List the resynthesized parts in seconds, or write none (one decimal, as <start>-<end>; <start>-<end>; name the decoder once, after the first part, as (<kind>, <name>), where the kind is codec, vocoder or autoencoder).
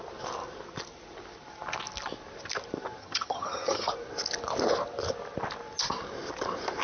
3.0-3.9 (vocoder, HiFi-GAN)